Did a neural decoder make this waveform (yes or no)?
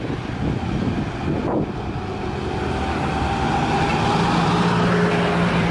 no